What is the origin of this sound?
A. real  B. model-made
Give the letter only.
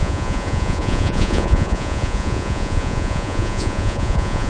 B